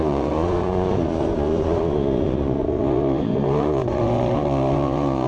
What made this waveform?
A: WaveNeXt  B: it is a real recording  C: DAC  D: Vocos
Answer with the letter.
D